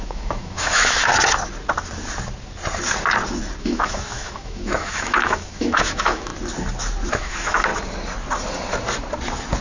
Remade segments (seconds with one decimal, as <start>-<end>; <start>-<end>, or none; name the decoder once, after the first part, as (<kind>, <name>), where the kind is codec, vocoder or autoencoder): 0.0-1.1 (autoencoder, DAC-VAE); 3.6-6.3; 7.1-7.7